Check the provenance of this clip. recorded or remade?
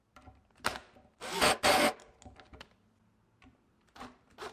recorded